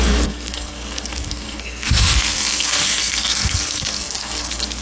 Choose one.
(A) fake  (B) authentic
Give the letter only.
A